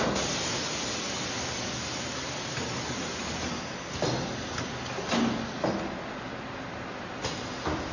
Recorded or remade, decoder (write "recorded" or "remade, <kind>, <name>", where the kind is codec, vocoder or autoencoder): recorded